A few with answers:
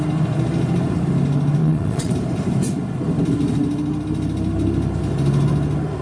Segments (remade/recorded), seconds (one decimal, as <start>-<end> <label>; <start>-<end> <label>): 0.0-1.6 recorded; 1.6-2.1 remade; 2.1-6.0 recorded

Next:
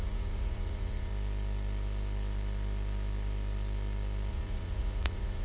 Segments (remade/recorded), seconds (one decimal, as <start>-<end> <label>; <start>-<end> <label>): 0.0-1.1 remade; 1.1-4.3 recorded; 4.3-5.4 remade

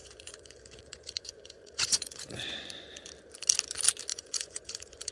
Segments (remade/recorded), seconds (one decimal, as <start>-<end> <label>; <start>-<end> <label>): 0.0-3.1 remade; 3.1-4.1 recorded; 4.1-5.1 remade

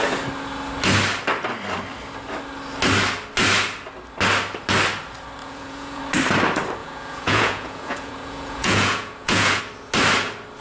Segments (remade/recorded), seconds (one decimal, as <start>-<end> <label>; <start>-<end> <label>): 0.0-5.4 recorded; 5.4-6.0 remade; 6.0-6.8 recorded; 6.8-9.6 remade; 9.6-10.6 recorded

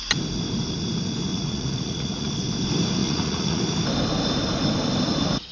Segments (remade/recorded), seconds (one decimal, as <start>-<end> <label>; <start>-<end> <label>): 0.0-1.3 recorded; 1.3-2.3 remade; 2.3-3.0 recorded; 3.0-3.6 remade; 3.6-5.5 recorded

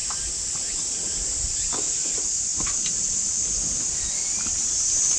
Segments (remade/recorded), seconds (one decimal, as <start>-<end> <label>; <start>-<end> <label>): 0.0-5.2 recorded